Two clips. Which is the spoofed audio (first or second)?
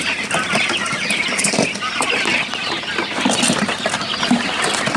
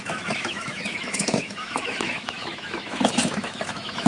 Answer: second